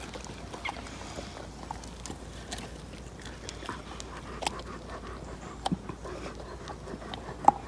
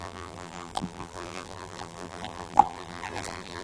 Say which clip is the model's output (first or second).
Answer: second